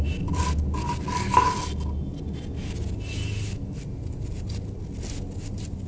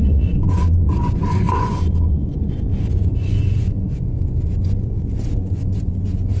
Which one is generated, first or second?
second